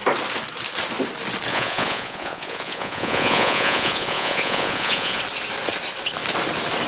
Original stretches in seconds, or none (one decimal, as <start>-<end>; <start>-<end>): 0.0-1.5; 5.2-6.9